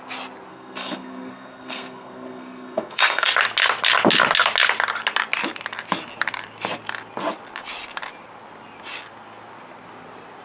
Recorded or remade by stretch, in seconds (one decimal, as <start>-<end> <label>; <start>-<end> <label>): 0.0-0.5 recorded; 0.5-3.3 remade; 3.3-10.4 recorded